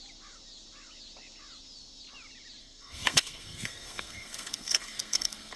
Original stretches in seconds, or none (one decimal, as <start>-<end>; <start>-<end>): 0.0-2.6

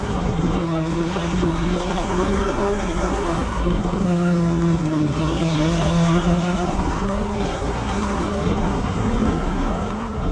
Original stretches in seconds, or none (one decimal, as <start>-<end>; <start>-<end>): none